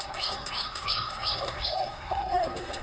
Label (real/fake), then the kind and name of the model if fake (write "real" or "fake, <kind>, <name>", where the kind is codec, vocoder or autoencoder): fake, codec, SNAC